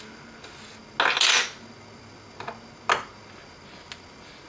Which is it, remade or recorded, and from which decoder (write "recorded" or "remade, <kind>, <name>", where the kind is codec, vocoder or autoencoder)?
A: recorded